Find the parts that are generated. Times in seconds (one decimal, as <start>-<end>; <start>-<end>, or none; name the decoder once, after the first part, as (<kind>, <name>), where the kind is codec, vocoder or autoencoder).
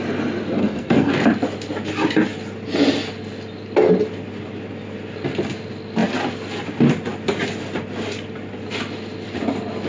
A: 0.6-1.1 (codec, SNAC)